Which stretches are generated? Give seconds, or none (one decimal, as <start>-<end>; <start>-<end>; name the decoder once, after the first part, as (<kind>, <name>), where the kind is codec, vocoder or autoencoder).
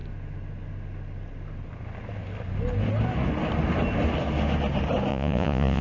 5.1-5.8 (vocoder, Vocos)